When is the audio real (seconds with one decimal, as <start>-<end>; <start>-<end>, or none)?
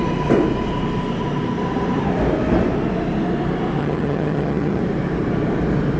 0.0-3.8; 4.8-6.0